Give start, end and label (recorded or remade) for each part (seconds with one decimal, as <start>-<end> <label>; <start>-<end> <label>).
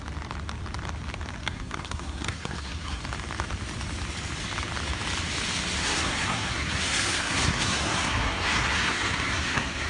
0.0-1.4 recorded; 1.4-3.0 remade; 3.0-5.8 recorded; 5.8-9.9 remade